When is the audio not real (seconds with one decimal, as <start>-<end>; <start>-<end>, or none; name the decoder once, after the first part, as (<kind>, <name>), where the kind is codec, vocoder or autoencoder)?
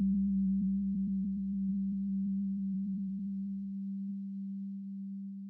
0.0-5.5 (vocoder, BigVGAN v2)